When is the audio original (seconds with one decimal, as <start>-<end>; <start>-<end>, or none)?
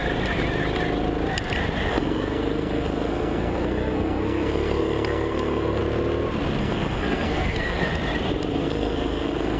0.0-1.9; 5.8-6.6; 7.9-8.5